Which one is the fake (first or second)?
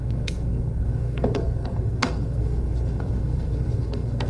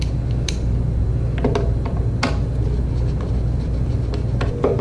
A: first